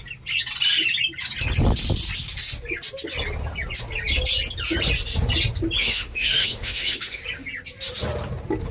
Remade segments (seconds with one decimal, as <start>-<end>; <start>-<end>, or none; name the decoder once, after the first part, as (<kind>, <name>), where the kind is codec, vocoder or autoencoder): 5.8-7.2 (autoencoder, DAC-VAE)